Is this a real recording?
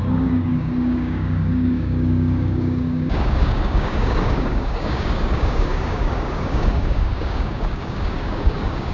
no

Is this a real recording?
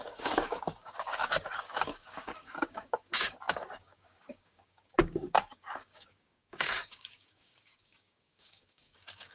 no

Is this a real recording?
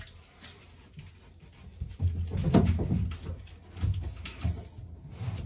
yes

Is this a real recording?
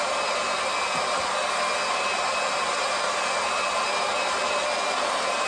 yes